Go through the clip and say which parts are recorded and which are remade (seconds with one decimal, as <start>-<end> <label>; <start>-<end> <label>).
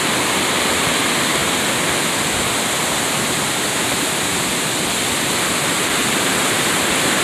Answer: 0.0-7.2 recorded